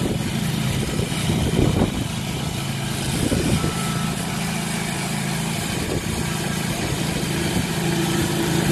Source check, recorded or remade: recorded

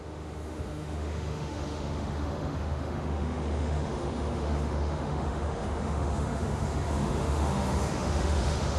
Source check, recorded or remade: remade